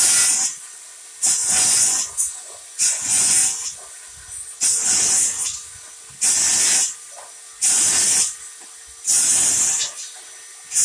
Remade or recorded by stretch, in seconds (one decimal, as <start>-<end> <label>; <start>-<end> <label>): 0.0-1.4 recorded; 1.4-3.4 remade; 3.4-10.8 recorded